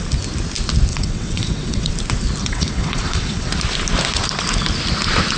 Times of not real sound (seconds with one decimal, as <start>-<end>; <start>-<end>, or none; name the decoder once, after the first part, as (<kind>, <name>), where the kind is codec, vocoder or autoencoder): 0.9-1.9 (vocoder, WaveNeXt); 2.4-3.5

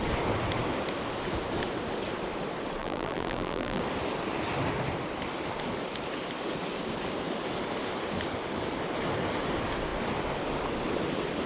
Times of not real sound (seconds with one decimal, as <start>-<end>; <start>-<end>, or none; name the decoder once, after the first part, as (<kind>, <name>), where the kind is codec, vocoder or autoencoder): 2.8-3.8 (vocoder, BigVGAN v2)

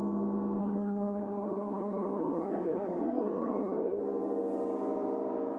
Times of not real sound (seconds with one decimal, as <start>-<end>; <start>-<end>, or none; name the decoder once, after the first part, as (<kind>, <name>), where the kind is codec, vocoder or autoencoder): 0.6-4.0 (codec, SNAC)

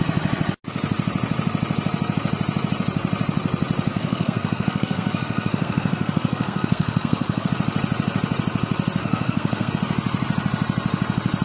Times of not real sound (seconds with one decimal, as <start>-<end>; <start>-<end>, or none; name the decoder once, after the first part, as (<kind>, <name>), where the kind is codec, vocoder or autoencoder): 3.9-7.5 (codec, SNAC); 9.0-9.7

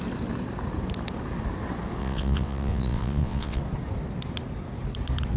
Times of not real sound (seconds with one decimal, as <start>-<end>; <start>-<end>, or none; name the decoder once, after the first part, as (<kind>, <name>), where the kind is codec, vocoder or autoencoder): 2.0-3.6 (vocoder, WaveNeXt)

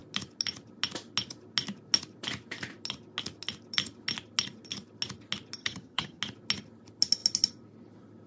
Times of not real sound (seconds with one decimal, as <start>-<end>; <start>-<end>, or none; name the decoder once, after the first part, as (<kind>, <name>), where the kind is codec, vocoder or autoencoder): 5.6-6.2 (vocoder, HiFi-GAN)

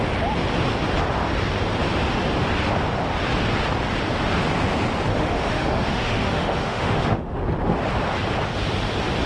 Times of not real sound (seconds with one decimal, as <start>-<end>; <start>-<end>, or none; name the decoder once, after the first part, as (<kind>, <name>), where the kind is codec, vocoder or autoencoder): 5.1-7.4 (autoencoder, DAC-VAE)

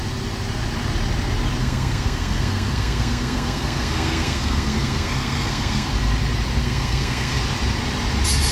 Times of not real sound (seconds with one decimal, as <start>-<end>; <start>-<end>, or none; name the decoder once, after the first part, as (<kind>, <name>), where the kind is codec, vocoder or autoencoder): 1.6-5.9 (codec, SNAC); 6.6-7.4